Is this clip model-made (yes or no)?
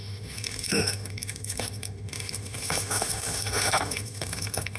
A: yes